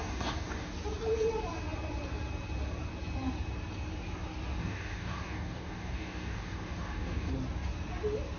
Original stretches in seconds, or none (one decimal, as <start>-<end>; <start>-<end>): 0.7-4.6; 7.3-8.4